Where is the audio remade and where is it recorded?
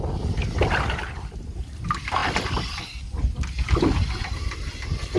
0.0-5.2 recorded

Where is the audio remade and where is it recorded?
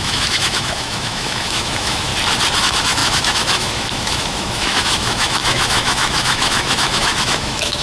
0.0-2.1 remade; 2.1-2.6 recorded; 2.6-7.8 remade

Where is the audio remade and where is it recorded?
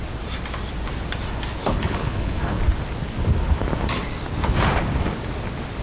0.0-1.6 recorded; 1.6-2.6 remade; 2.6-5.8 recorded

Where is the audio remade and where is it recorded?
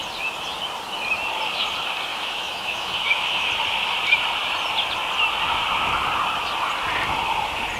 0.0-2.1 recorded; 2.1-3.5 remade; 3.5-7.8 recorded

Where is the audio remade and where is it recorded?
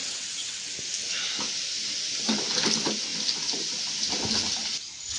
0.0-0.7 remade; 0.7-5.2 recorded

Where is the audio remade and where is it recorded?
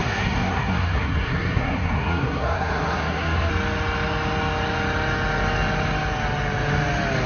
0.0-3.5 remade; 3.5-7.3 recorded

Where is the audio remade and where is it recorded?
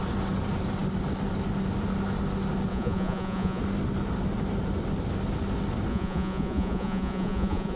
0.0-2.7 recorded; 2.7-3.6 remade; 3.6-5.9 recorded; 5.9-7.8 remade